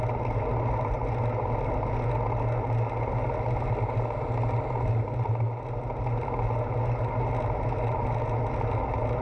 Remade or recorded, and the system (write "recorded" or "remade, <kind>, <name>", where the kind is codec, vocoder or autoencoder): recorded